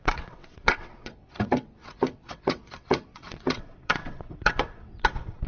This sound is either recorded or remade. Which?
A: remade